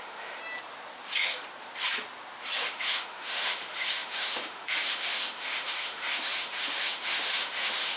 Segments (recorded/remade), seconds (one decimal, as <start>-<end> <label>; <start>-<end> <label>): 0.0-0.4 remade; 0.4-2.6 recorded; 2.6-8.0 remade